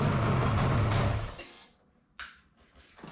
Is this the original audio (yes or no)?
yes